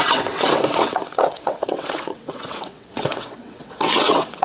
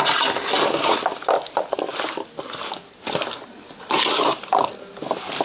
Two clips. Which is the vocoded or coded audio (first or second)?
first